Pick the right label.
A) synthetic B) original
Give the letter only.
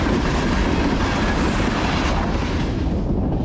B